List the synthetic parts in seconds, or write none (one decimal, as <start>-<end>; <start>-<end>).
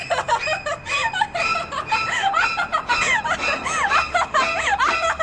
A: none